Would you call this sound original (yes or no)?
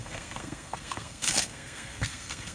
no